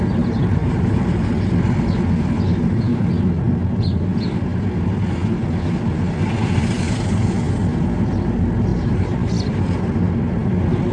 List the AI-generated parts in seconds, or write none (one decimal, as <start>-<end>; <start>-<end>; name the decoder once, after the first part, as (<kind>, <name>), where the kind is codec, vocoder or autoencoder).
0.6-1.2 (vocoder, BigVGAN v2); 8.7-9.3